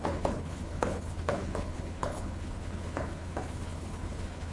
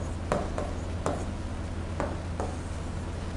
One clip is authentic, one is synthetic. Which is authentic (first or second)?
second